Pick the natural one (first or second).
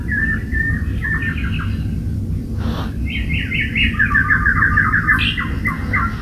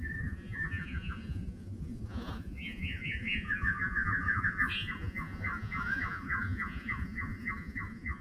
first